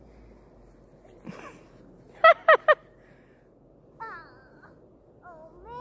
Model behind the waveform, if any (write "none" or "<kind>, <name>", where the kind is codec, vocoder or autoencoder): none